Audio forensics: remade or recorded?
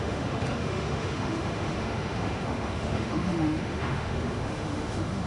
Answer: remade